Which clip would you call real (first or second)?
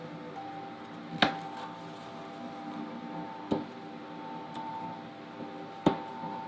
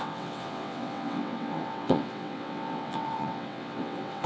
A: first